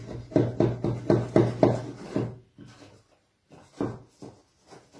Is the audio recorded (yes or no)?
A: yes